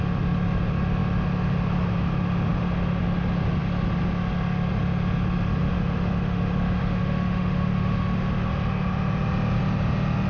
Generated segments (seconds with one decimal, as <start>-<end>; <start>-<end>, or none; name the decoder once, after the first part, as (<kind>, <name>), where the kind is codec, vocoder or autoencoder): 5.6-8.5 (autoencoder, DAC-VAE)